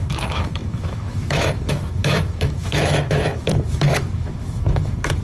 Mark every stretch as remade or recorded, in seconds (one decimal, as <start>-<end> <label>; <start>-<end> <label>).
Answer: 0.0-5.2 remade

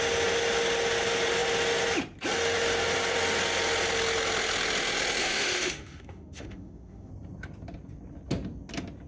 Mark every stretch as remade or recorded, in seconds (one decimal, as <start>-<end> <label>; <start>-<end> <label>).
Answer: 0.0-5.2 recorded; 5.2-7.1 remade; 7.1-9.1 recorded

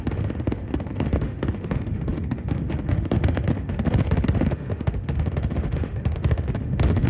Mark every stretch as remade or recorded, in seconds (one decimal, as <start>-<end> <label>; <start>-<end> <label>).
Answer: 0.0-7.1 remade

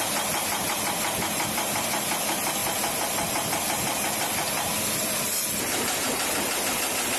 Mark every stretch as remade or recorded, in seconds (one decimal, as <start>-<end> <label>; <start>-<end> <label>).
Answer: 0.0-7.2 recorded

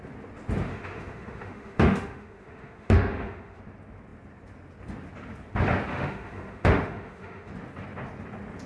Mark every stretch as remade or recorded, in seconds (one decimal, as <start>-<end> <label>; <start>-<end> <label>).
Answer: 0.0-0.7 recorded; 0.7-3.6 remade; 3.6-5.9 recorded; 5.9-7.5 remade; 7.5-8.7 recorded

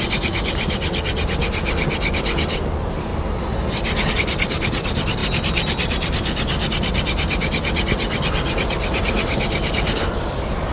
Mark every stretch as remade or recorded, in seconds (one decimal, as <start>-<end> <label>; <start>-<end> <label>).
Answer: 0.0-10.7 recorded